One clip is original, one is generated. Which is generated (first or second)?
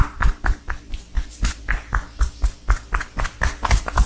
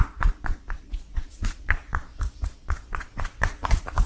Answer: second